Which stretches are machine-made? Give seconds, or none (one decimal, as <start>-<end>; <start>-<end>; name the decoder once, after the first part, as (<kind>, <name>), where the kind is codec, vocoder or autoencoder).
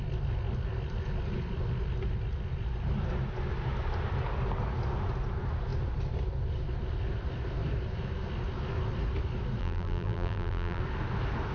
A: 9.6-10.8 (vocoder, BigVGAN v2)